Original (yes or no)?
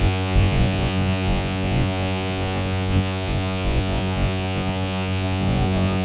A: no